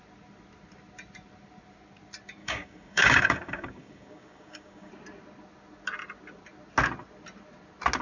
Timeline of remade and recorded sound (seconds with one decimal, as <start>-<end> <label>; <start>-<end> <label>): 0.0-2.4 recorded; 2.4-4.9 remade; 4.9-8.0 recorded